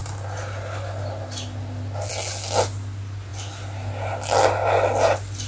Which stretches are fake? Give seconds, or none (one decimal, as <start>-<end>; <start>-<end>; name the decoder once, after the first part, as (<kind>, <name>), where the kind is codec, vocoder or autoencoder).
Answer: none